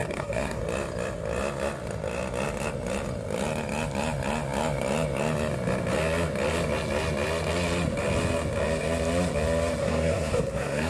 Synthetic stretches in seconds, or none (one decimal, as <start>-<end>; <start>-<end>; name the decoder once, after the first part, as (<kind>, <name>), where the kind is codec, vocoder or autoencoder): 0.0-0.6 (codec, SNAC); 9.8-10.9